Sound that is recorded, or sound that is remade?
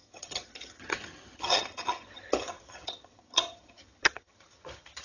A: remade